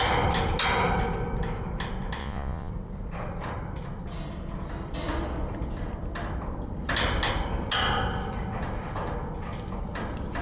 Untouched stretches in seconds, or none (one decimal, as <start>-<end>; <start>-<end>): 0.0-2.2; 2.7-10.4